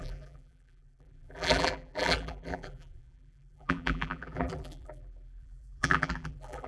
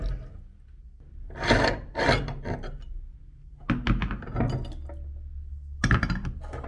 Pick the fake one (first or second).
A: first